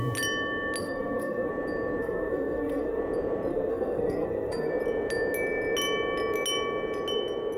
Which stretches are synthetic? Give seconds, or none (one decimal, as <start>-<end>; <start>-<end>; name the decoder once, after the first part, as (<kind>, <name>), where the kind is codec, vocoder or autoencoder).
0.8-1.5 (codec, SNAC); 2.0-3.0; 3.5-4.7